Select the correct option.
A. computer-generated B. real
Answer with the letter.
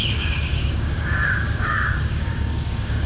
A